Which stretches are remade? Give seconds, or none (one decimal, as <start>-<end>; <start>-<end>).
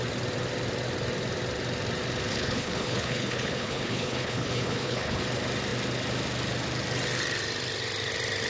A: 2.3-5.2